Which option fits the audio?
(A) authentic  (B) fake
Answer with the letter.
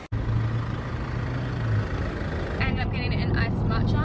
A